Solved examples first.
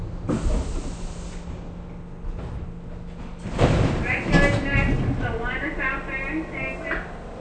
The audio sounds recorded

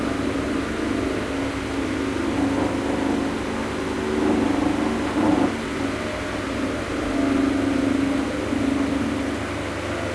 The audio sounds recorded